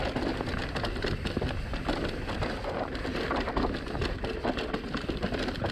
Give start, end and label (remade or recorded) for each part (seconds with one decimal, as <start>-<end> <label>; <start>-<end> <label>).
0.0-5.7 recorded